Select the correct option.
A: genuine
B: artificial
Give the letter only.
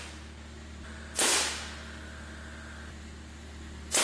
A